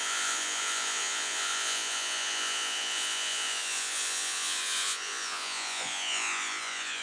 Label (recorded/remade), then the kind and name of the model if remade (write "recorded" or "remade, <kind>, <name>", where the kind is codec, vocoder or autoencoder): remade, vocoder, Vocos